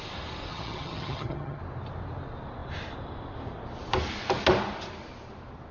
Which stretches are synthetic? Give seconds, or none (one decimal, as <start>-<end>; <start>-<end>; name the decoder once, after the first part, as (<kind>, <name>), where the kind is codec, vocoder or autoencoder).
0.5-1.6 (vocoder, HiFi-GAN)